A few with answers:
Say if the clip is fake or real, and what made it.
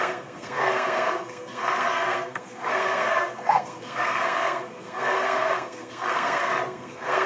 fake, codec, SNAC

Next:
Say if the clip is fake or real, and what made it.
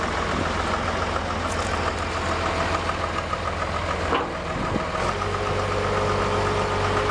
real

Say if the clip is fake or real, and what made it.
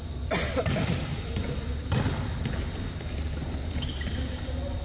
real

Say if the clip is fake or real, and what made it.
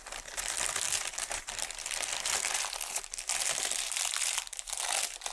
real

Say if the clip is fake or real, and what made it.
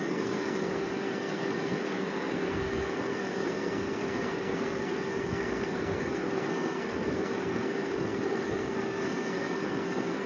fake, codec, SNAC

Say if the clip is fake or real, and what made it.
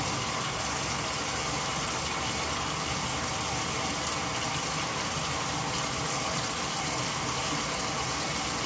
real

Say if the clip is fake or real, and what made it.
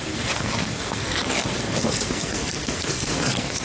fake, codec, SNAC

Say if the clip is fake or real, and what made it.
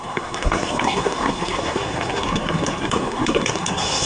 fake, codec, SNAC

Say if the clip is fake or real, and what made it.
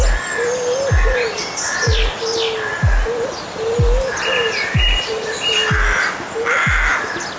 real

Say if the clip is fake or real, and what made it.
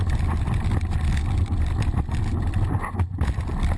real